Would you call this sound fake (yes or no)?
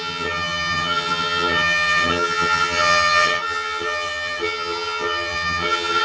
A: yes